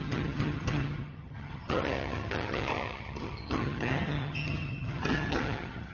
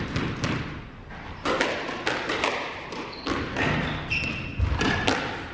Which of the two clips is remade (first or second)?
first